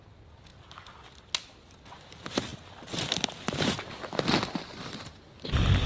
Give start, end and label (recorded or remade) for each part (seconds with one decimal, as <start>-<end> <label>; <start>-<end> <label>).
0.0-0.5 recorded; 0.5-1.3 remade; 1.3-2.5 recorded; 2.5-4.7 remade; 4.7-5.9 recorded